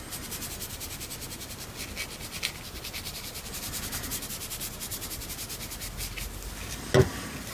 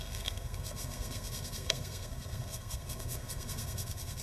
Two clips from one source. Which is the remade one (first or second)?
second